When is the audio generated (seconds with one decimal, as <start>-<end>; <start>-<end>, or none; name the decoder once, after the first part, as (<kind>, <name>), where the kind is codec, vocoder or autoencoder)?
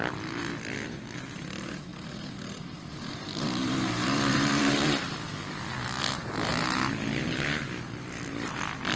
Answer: 1.9-4.7 (vocoder, BigVGAN v2)